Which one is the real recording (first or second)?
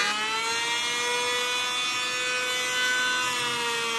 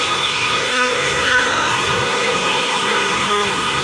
first